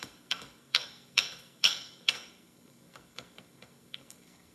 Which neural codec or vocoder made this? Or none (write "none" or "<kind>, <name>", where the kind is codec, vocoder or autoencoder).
codec, SNAC